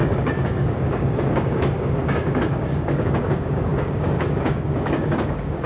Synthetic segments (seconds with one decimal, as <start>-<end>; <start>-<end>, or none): 0.0-5.7

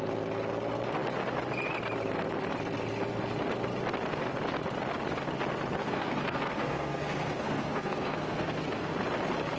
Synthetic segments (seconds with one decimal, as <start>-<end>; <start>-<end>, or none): 5.8-8.9

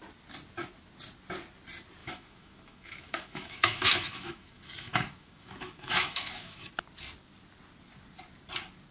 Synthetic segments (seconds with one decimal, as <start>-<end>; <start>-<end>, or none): 2.0-6.7

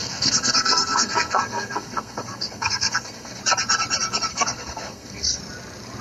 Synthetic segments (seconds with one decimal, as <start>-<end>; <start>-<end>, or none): 0.0-3.4; 4.3-5.4